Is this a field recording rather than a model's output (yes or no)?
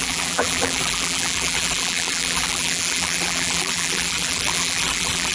no